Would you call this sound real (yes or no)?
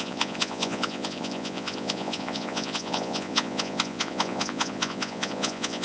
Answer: no